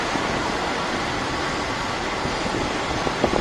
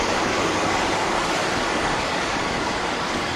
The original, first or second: first